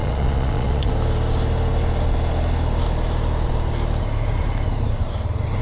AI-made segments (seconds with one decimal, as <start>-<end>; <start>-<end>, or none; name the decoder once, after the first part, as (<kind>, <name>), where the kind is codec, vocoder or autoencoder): 0.0-0.9 (vocoder, Vocos)

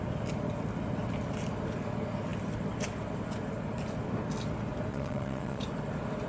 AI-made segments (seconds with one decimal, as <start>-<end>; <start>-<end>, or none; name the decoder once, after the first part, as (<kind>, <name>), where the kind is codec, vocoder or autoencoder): 4.9-5.6 (vocoder, Vocos)

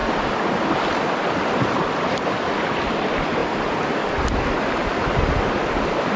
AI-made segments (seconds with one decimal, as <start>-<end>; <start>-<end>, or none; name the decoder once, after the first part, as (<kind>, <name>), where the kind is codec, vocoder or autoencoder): none

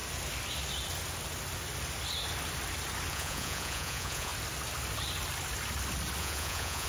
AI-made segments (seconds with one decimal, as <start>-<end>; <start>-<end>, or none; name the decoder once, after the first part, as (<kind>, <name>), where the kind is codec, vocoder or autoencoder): 3.1-4.3 (vocoder, Vocos); 6.2-6.9